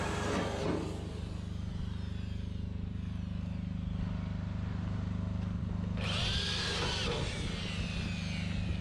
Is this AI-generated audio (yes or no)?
no